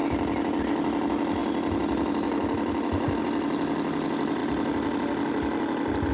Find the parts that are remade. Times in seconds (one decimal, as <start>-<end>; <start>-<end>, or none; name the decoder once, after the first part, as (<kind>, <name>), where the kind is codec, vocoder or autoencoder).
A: none